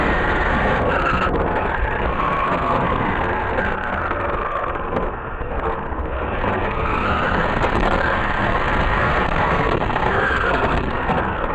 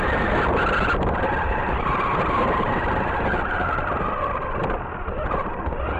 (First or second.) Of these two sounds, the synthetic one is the first